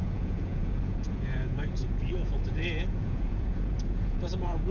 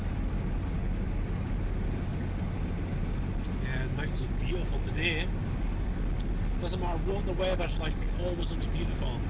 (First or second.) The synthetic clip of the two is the first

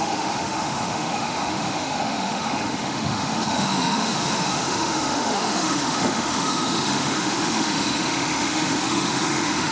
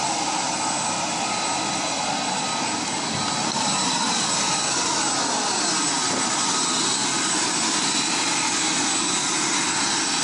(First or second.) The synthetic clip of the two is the first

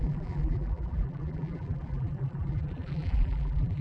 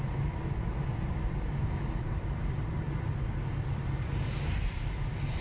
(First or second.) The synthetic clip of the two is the first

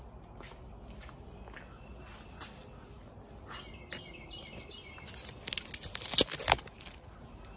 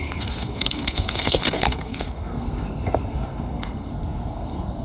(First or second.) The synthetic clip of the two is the second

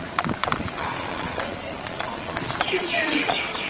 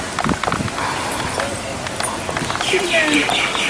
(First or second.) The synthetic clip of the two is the first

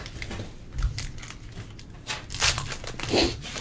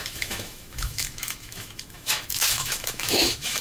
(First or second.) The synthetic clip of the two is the second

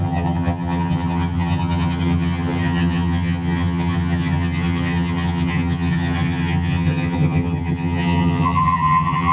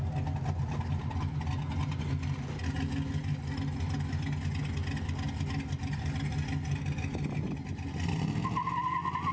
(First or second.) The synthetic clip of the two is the first